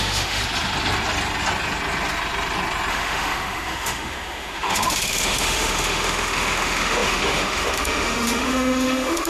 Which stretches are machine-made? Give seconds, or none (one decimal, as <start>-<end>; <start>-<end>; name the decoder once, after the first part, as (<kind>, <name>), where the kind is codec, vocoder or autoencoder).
0.0-0.4 (autoencoder, DAC-VAE); 2.9-9.3